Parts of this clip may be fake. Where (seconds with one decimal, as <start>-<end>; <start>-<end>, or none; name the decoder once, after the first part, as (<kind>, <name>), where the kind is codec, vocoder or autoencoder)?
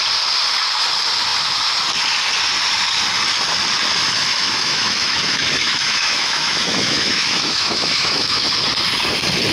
4.3-8.5 (autoencoder, DAC-VAE)